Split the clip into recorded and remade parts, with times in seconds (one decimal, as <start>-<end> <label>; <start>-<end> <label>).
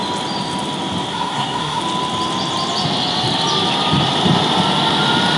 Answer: 0.0-1.1 recorded; 1.1-1.8 remade; 1.8-5.4 recorded